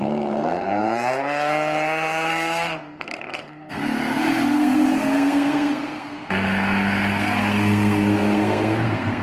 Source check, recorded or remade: remade